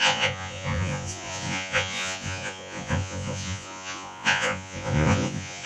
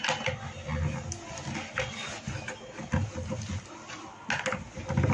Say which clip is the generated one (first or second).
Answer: first